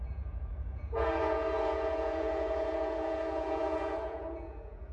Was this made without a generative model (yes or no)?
no